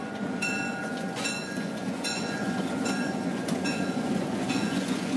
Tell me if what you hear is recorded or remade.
remade